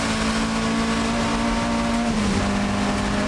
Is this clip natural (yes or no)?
yes